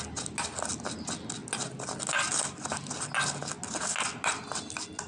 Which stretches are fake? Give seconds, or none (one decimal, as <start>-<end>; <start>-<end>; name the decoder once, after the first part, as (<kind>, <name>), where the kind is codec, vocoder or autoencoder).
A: none

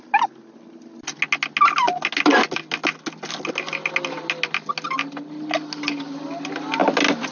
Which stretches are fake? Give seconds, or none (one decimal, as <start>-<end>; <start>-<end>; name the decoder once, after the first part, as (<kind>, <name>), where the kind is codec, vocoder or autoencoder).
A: none

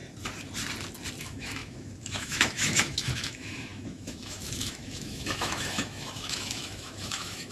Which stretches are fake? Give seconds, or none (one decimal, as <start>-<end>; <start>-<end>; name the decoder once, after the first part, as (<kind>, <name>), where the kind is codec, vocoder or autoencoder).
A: 1.2-7.5 (autoencoder, DAC-VAE)